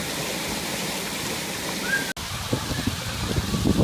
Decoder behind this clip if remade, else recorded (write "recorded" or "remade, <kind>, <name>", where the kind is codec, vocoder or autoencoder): recorded